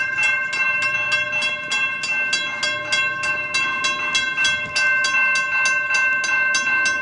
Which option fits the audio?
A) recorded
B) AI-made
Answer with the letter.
A